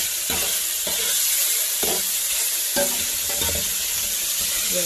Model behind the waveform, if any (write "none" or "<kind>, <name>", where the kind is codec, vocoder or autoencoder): none